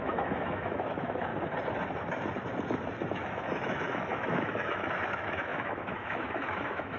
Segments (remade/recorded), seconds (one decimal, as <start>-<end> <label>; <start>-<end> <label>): 0.0-1.3 remade; 1.3-3.1 recorded; 3.1-7.0 remade